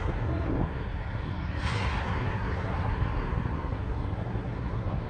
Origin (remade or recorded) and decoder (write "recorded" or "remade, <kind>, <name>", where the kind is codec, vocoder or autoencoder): remade, codec, SNAC